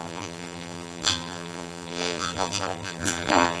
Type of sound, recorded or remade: remade